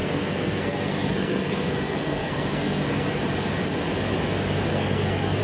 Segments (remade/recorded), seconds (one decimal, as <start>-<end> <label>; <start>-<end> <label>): 0.0-3.2 remade; 3.2-4.7 recorded; 4.7-5.4 remade